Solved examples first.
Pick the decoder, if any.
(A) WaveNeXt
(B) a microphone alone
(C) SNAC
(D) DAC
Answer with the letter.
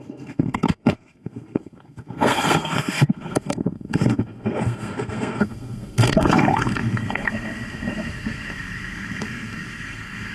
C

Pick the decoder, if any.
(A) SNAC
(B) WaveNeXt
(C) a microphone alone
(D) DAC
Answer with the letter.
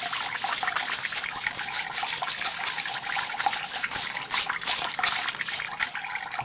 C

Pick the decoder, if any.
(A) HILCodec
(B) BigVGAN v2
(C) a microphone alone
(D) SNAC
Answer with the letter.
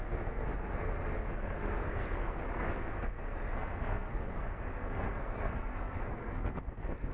D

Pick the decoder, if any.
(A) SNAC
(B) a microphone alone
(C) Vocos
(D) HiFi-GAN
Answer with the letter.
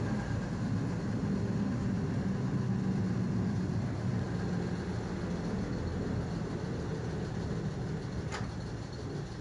B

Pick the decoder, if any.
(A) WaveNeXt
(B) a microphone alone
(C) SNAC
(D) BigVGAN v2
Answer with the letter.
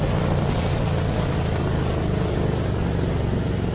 B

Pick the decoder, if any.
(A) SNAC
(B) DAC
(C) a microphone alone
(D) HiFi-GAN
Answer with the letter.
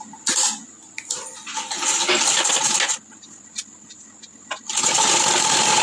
C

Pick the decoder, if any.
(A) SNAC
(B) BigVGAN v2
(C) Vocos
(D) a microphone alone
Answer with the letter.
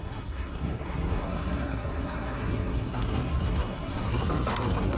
A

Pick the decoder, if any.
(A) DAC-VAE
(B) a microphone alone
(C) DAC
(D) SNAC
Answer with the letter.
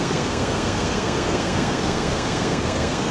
D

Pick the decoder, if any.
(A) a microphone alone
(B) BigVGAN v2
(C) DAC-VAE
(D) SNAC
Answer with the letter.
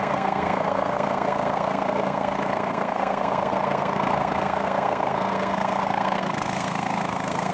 D